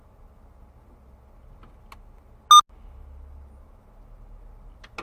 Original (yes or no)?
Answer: yes